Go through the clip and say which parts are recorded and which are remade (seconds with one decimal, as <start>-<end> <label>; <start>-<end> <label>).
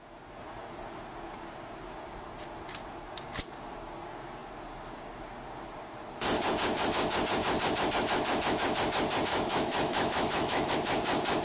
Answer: 0.0-9.3 recorded; 9.3-10.7 remade; 10.7-11.4 recorded